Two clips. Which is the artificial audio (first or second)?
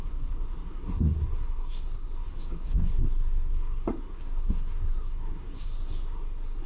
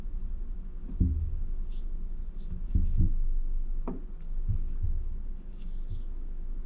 first